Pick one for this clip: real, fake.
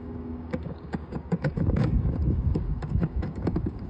fake